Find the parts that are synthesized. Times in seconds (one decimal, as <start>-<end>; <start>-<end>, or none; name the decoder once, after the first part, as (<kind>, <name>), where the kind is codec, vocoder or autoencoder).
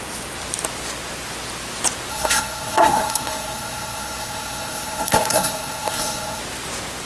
2.1-6.4 (codec, SNAC)